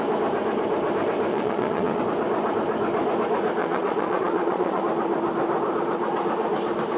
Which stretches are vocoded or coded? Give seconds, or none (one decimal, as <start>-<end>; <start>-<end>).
1.3-2.0; 3.6-4.8